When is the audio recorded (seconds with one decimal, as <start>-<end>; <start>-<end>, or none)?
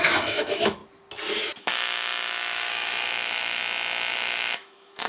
0.8-1.6; 3.6-4.1